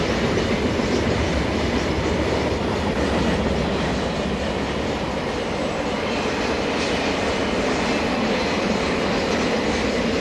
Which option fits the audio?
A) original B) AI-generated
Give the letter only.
A